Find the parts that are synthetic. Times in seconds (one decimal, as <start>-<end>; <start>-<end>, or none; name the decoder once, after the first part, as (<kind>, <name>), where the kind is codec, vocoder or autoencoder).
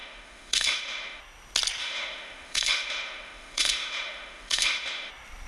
0.0-1.2 (autoencoder, DAC-VAE); 1.8-5.1